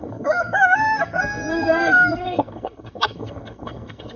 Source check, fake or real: fake